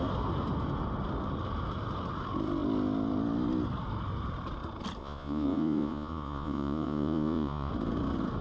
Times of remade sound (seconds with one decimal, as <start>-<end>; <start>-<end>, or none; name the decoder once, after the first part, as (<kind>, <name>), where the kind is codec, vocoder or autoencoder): 5.0-7.7 (vocoder, Vocos)